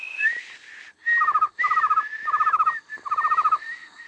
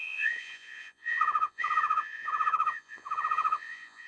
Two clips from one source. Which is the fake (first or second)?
second